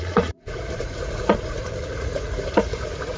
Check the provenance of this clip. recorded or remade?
remade